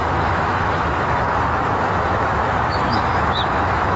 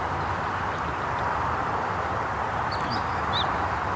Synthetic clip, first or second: first